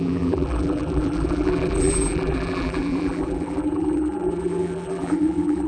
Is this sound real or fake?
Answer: fake